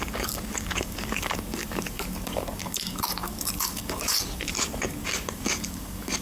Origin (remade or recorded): remade